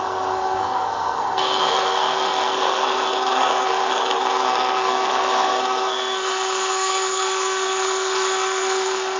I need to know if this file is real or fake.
fake